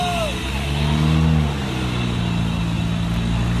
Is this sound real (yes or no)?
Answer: yes